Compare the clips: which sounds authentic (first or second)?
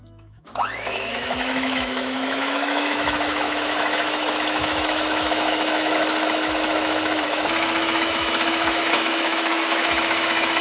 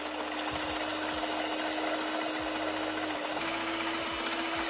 second